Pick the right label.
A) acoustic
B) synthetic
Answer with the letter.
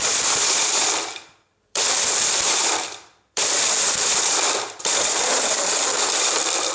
B